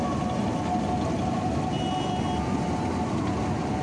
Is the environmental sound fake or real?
real